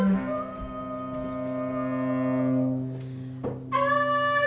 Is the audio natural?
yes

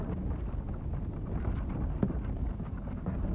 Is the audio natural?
yes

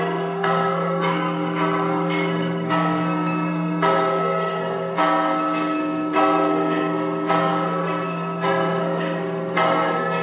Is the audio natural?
no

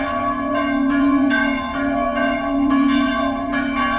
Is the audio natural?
no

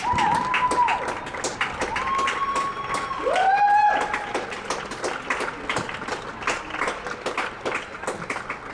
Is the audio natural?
yes